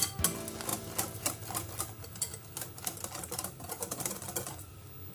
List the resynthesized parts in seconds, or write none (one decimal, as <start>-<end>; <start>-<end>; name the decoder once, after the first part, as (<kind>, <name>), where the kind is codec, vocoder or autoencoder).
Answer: none

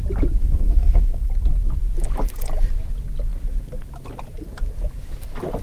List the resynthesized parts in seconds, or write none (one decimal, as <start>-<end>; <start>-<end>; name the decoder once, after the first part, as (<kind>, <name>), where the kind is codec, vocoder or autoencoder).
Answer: 0.4-1.3 (codec, SNAC)

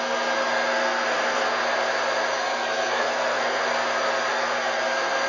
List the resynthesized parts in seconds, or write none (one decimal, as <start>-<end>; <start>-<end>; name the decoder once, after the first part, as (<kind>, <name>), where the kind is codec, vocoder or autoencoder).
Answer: 0.0-1.6 (codec, SNAC); 2.4-3.6; 4.3-5.3

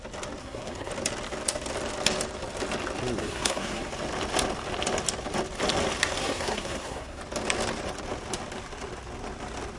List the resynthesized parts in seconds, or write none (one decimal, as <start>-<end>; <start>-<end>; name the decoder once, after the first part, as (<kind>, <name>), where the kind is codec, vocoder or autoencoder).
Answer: 0.4-0.9 (codec, SNAC); 3.2-3.9; 6.2-7.2

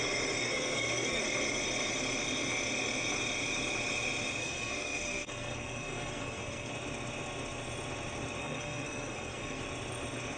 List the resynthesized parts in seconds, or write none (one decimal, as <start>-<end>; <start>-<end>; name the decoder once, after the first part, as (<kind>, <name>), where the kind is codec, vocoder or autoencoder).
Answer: 0.4-1.2 (codec, SNAC); 4.4-6.7; 8.4-9.6

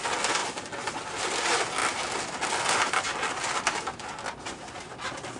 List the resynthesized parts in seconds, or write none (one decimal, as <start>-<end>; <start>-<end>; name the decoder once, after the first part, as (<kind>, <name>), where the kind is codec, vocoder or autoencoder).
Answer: none

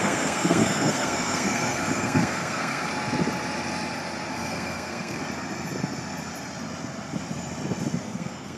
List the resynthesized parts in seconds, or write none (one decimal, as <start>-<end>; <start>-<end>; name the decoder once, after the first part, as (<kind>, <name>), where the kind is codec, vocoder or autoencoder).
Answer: 0.0-2.9 (codec, SNAC); 4.3-5.2; 8.0-8.6